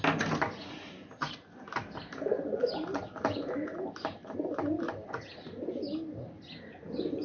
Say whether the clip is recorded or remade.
recorded